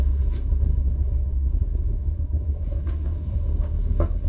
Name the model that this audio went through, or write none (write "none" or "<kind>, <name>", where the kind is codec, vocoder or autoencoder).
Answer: codec, SNAC